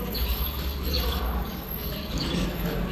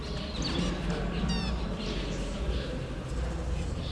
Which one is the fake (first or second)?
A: first